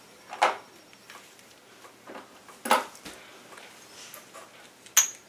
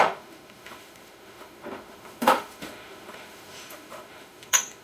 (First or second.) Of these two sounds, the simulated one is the second